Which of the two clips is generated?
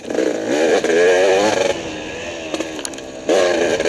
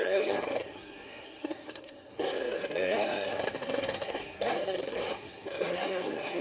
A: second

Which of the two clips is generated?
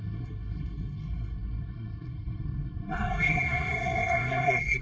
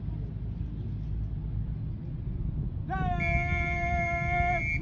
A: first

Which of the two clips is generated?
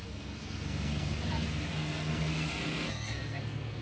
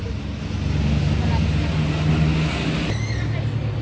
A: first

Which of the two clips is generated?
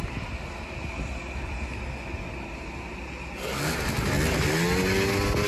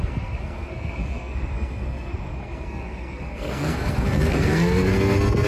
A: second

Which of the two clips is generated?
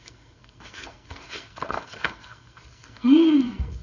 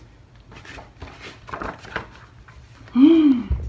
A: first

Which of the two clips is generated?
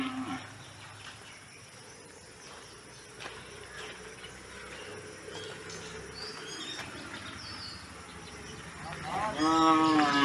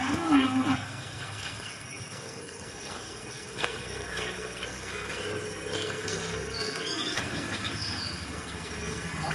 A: second